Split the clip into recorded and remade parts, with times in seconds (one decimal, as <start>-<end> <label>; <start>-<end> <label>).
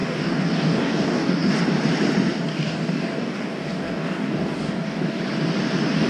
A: 0.0-1.5 remade; 1.5-2.5 recorded; 2.5-5.2 remade; 5.2-6.1 recorded